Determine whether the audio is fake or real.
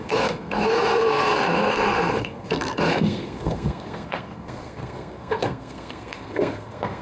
fake